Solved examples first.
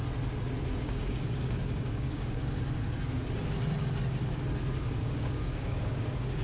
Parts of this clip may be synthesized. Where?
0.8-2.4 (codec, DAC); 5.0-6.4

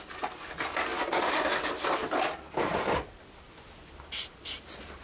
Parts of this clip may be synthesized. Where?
none

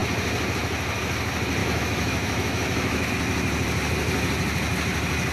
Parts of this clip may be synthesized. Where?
1.6-3.1 (autoencoder, DAC-VAE)

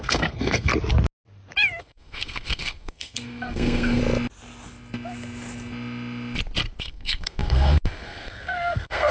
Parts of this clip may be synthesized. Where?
0.0-0.7 (codec, SNAC); 1.8-4.0; 6.8-9.1